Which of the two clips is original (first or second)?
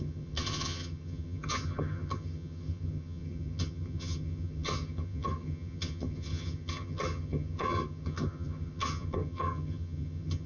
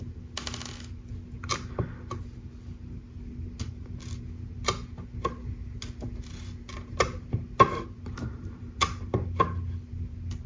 second